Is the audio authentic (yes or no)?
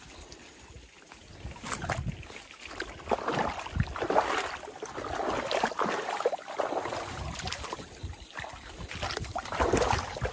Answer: yes